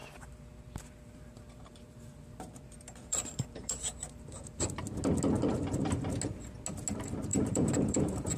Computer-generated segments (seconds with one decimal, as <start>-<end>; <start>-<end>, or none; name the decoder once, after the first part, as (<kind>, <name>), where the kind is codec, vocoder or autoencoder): 0.0-4.8 (vocoder, BigVGAN v2); 7.3-8.4